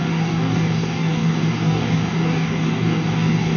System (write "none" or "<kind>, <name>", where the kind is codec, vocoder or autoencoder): codec, DAC